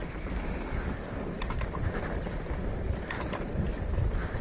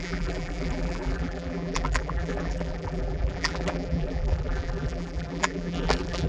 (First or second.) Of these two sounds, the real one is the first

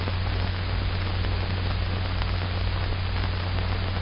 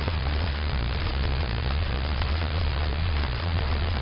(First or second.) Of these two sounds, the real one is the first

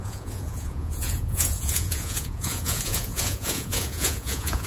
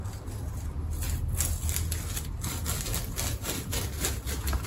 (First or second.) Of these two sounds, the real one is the second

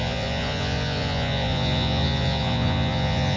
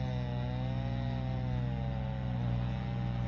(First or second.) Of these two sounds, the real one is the second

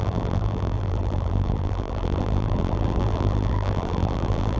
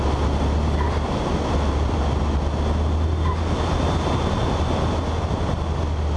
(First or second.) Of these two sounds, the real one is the second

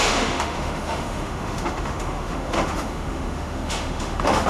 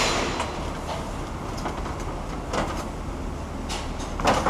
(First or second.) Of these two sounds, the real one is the second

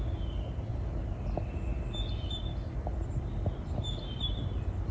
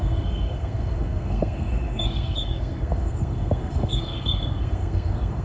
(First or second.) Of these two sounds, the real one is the first